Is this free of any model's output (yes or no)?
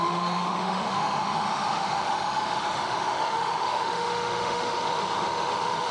no